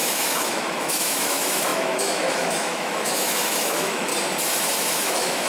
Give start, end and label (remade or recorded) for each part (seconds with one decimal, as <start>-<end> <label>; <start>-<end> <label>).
0.0-4.1 remade; 4.1-4.8 recorded; 4.8-5.5 remade